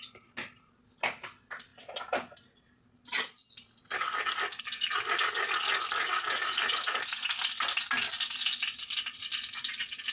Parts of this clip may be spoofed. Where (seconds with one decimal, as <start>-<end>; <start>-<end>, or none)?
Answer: none